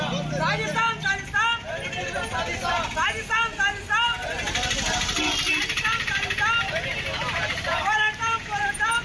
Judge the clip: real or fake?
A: real